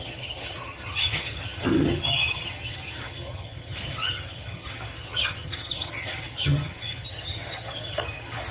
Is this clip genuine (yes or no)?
no